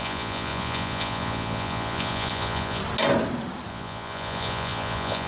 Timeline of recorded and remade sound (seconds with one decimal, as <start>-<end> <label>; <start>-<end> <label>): 0.0-2.8 remade; 2.8-3.7 recorded; 3.7-5.3 remade